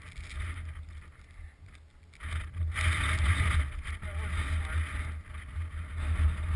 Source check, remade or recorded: recorded